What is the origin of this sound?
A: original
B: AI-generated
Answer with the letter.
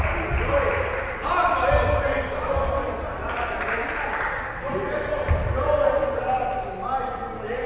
A